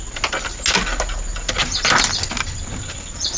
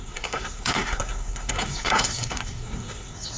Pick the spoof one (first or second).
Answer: second